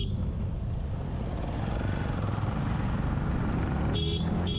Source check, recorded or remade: recorded